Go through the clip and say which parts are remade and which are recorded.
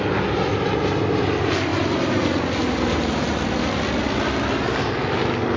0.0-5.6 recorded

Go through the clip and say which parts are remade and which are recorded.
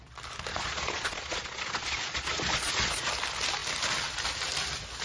0.0-0.5 recorded; 0.5-3.1 remade; 3.1-5.0 recorded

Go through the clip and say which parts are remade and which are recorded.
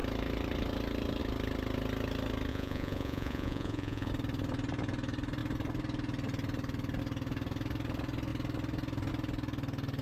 0.0-2.5 recorded; 2.5-4.1 remade; 4.1-10.0 recorded